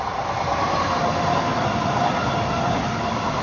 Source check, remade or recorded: recorded